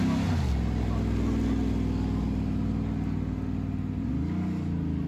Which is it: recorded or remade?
recorded